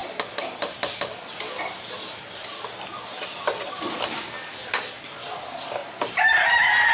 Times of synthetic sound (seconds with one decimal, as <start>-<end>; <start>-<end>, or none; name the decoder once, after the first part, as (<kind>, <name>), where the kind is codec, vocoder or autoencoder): 5.8-6.9 (vocoder, BigVGAN v2)